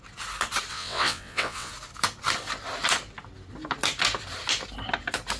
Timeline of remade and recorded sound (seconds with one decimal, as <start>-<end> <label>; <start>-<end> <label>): 0.0-0.7 recorded; 0.7-1.7 remade; 1.7-5.4 recorded